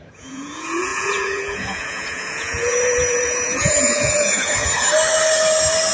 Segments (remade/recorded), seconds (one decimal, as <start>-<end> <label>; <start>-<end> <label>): 0.0-4.6 remade; 4.6-5.9 recorded